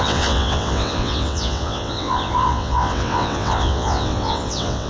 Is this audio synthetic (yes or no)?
yes